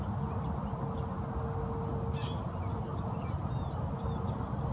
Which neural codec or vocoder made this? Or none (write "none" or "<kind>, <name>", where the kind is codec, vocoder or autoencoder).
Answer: none